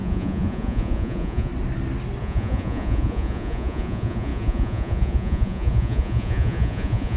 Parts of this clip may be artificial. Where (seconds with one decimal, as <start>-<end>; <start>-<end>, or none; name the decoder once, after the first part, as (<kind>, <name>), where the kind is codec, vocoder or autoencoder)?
0.0-1.5 (vocoder, Vocos); 2.2-7.2